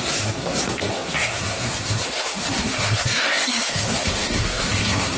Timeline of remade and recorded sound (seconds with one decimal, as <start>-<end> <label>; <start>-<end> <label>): 0.0-5.2 remade

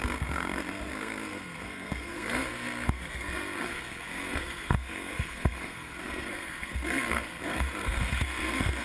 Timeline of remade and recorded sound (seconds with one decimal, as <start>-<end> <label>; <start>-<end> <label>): 0.0-8.8 remade